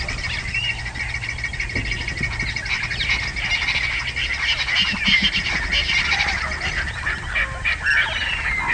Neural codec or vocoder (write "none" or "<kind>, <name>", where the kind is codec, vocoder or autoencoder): none